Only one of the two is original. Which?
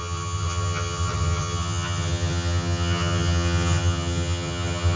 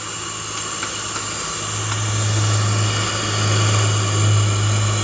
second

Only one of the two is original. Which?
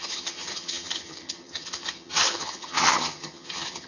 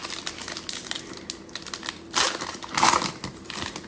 second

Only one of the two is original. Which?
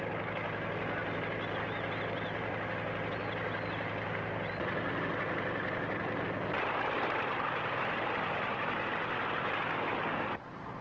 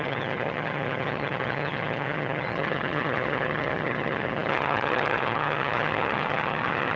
first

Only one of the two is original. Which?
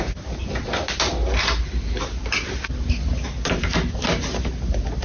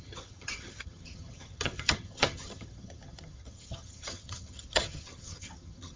first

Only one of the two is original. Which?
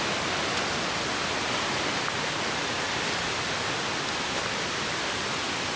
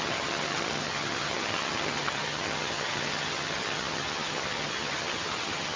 first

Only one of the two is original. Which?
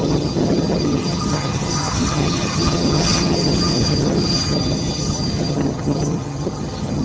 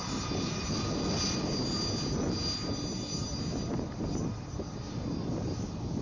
second